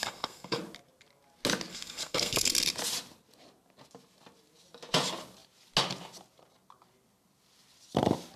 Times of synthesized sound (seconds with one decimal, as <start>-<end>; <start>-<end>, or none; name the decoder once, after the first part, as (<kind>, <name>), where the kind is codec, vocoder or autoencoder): 0.0-0.6 (codec, SNAC); 1.7-2.5